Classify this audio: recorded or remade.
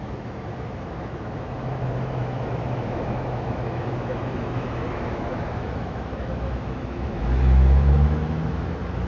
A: remade